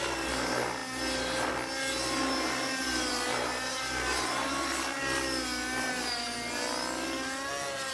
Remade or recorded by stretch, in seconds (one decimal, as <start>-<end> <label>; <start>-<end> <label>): 0.0-7.9 recorded